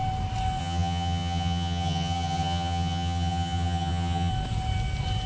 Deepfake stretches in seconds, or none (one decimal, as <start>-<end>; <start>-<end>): 0.6-4.3